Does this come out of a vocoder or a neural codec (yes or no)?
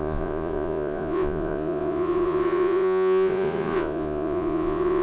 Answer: yes